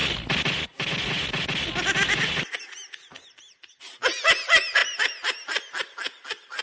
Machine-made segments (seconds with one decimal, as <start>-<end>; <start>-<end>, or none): none